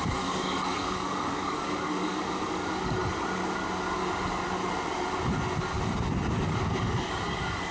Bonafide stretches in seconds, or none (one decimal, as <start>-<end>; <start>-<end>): 3.0-6.4